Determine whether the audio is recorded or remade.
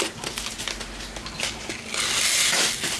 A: recorded